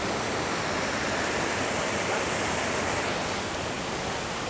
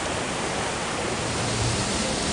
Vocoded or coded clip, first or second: first